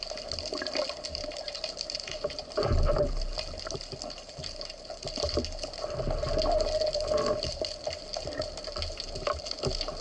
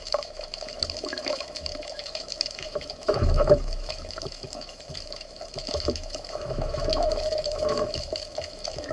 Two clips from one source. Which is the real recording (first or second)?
first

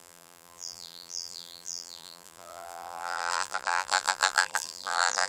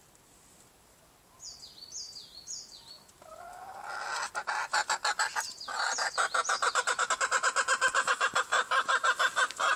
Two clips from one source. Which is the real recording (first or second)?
second